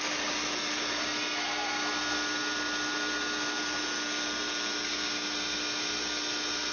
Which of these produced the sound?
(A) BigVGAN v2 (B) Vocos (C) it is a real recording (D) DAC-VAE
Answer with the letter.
C